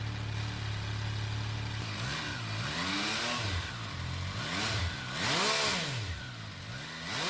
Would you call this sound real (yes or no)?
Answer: yes